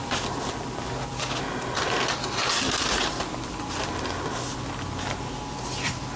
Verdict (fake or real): real